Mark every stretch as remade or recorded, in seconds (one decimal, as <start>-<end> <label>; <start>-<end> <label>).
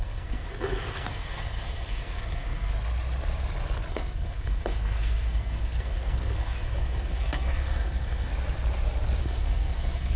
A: 0.0-2.7 remade; 2.7-3.9 recorded; 3.9-8.3 remade; 8.3-9.2 recorded; 9.2-10.2 remade